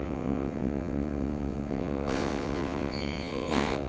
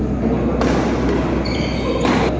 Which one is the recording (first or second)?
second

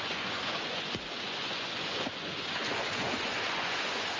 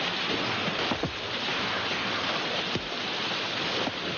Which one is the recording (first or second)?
second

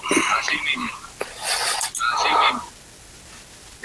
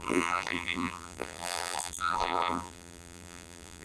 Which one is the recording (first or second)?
first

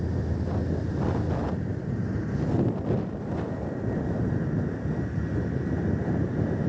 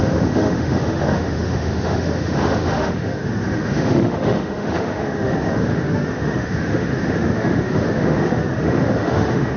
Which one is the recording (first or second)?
first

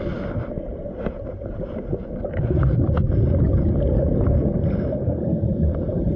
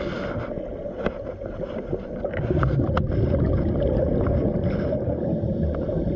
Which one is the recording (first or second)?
second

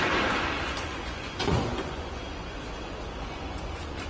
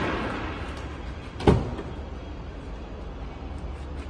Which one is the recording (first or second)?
second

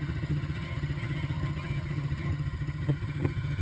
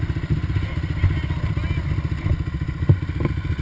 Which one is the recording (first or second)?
second